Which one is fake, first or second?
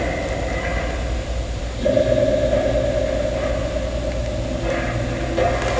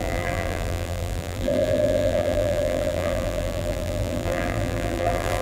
second